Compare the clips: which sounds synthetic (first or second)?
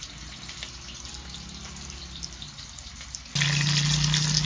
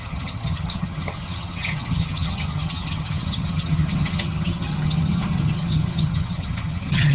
second